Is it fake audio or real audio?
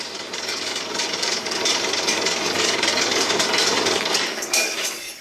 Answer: fake